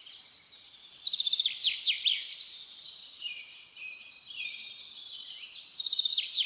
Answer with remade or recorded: remade